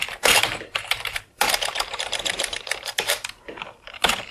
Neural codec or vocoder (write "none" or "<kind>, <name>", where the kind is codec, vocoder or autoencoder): vocoder, BigVGAN v2